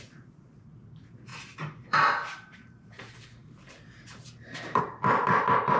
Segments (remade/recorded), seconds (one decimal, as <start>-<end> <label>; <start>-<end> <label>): 0.0-1.3 recorded; 1.3-4.8 remade; 4.8-5.8 recorded